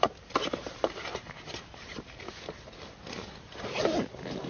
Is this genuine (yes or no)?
yes